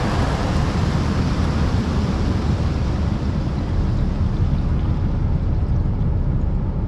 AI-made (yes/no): no